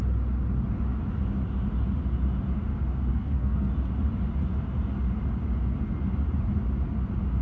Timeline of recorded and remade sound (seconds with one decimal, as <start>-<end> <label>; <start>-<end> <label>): 0.0-3.1 recorded; 3.1-3.7 remade; 3.7-7.4 recorded